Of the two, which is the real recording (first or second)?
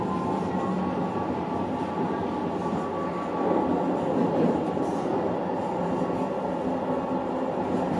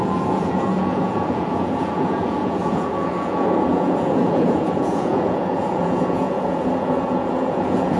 first